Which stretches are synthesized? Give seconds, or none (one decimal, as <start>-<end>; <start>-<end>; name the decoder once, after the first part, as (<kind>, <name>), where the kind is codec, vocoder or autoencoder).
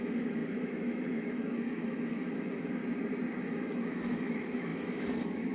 0.0-2.8 (autoencoder, DAC-VAE); 3.4-5.5